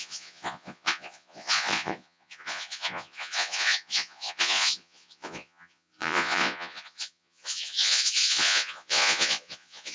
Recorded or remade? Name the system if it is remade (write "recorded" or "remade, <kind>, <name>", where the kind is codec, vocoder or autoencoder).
remade, vocoder, Vocos